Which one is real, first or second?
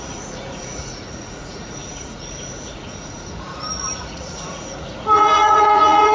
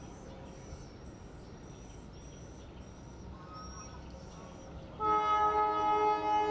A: second